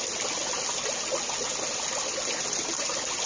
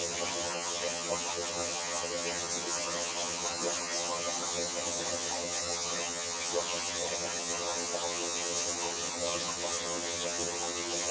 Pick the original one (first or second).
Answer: first